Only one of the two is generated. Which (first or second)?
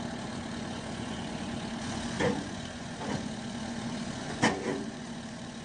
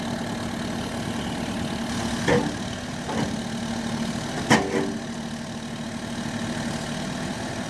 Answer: first